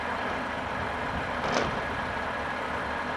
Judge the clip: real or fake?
real